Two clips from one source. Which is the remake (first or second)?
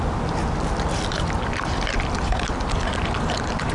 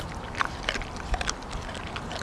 second